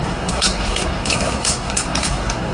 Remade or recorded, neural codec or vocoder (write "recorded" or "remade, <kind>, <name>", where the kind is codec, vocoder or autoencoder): remade, codec, SNAC